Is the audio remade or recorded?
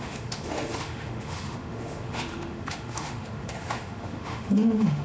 remade